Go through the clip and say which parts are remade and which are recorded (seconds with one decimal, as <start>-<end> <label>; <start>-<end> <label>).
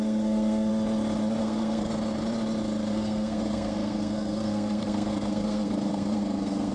0.0-0.7 remade; 0.7-1.4 recorded; 1.4-1.9 remade; 1.9-2.9 recorded; 2.9-6.7 remade